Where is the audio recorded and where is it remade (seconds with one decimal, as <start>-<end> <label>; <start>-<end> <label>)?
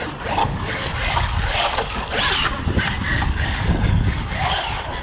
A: 0.0-0.4 recorded; 0.4-2.2 remade; 2.2-3.1 recorded; 3.1-4.6 remade; 4.6-5.0 recorded